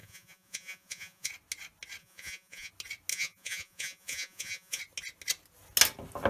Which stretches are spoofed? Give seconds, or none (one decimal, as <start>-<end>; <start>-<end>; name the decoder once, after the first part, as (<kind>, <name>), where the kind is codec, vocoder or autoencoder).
0.0-1.3 (vocoder, Vocos); 2.0-2.7; 3.1-4.8